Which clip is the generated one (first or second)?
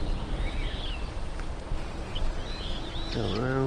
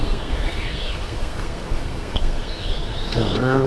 second